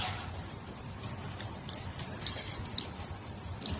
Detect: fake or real real